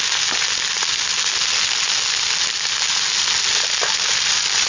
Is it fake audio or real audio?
real